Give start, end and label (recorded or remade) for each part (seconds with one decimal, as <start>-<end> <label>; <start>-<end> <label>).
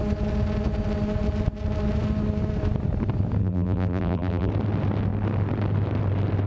0.0-3.4 recorded; 3.4-4.5 remade; 4.5-6.5 recorded